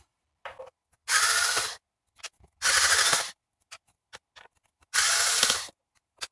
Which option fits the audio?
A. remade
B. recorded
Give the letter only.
B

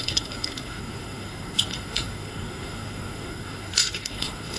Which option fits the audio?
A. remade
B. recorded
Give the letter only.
A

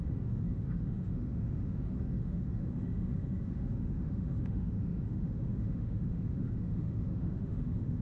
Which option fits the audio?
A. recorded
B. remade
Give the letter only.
B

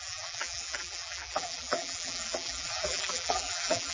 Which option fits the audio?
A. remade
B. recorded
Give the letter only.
A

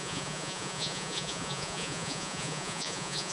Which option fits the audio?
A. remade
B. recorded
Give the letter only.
A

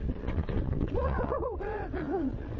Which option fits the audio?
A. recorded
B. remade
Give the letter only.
B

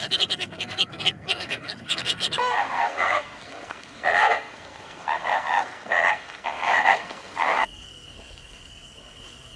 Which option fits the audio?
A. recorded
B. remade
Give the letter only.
B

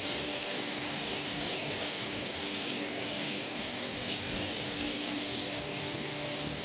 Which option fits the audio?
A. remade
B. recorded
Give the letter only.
A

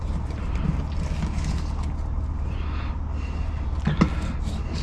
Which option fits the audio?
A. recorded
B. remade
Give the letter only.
A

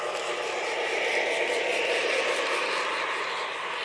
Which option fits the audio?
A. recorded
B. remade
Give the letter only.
A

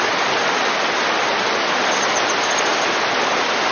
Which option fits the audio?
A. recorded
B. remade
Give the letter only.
A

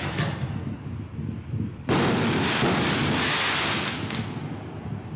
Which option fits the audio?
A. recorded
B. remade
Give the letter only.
B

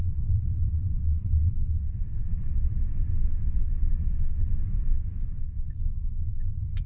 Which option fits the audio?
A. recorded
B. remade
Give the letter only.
B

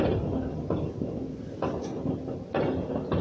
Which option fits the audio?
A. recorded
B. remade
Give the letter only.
A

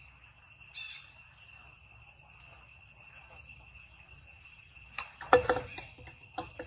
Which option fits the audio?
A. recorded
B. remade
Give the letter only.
A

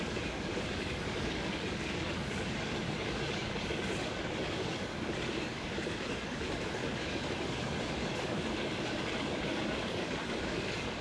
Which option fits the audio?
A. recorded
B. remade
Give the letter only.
B